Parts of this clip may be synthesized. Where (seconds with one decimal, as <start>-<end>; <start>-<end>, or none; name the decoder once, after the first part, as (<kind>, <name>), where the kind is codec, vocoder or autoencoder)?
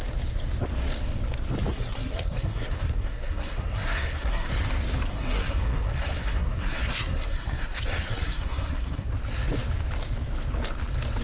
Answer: 1.7-4.5 (codec, SNAC); 5.1-9.1